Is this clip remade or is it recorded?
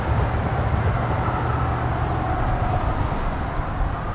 recorded